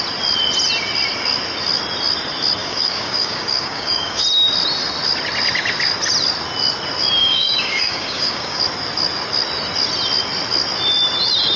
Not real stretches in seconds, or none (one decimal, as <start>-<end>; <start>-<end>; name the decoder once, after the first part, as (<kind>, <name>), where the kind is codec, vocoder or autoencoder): 2.6-4.2 (codec, DAC); 7.2-8.6